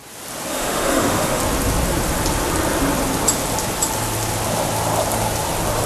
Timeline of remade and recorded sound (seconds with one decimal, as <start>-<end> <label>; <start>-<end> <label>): 0.0-0.5 recorded; 0.5-1.4 remade; 1.4-5.9 recorded